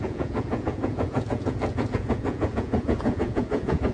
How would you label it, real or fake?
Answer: fake